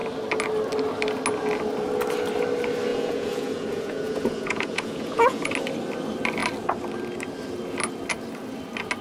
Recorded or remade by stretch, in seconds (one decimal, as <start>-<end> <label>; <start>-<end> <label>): 0.0-2.9 recorded; 2.9-5.5 remade; 5.5-9.0 recorded